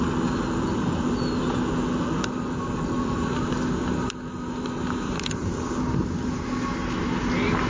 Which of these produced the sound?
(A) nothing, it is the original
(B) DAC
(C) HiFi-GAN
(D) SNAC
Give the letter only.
A